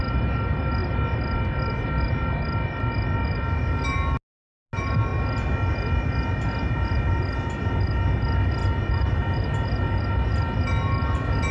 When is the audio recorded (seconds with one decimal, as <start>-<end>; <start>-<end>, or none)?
0.0-11.5